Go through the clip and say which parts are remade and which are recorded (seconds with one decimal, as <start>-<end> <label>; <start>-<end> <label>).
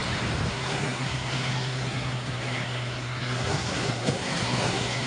0.0-0.5 recorded; 0.5-5.1 remade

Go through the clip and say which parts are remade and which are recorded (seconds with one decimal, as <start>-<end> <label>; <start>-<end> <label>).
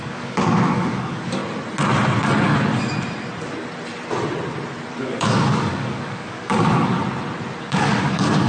0.0-1.4 remade; 1.4-5.0 recorded; 5.0-7.0 remade; 7.0-7.6 recorded; 7.6-8.5 remade